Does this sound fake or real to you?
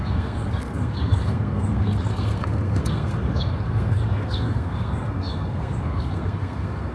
fake